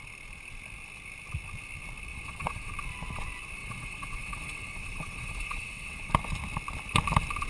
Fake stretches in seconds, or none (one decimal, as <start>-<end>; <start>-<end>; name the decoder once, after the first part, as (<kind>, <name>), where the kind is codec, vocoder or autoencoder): 2.1-2.7 (vocoder, WaveNeXt); 3.6-6.1